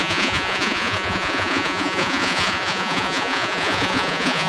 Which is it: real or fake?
fake